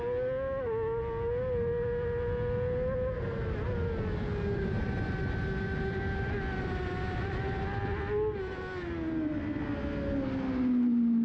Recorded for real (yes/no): yes